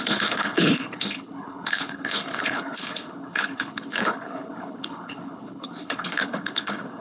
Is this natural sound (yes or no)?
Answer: no